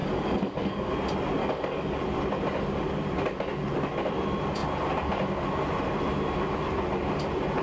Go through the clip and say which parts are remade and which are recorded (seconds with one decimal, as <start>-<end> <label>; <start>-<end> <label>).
0.0-0.9 remade; 0.9-1.4 recorded; 1.4-2.0 remade; 2.0-7.6 recorded